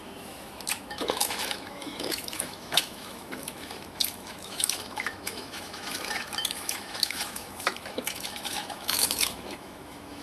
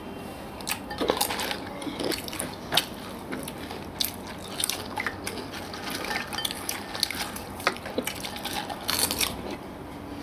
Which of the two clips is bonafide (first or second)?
second